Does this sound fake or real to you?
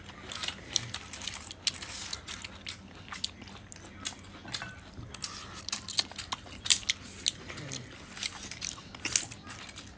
real